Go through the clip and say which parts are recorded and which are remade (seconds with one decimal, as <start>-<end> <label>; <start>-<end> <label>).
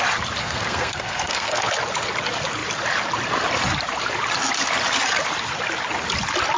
0.0-0.4 recorded; 0.4-1.7 remade; 1.7-6.6 recorded